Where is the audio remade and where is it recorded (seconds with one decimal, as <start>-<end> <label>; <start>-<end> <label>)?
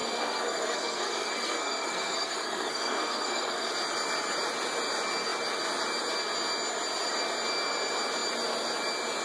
0.0-3.7 remade; 3.7-9.2 recorded